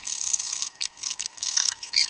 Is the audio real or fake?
fake